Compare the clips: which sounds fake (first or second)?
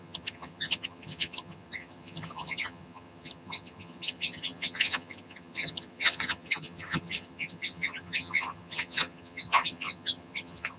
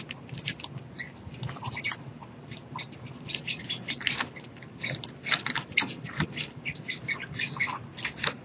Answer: first